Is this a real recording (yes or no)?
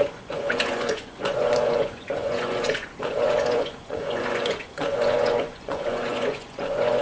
no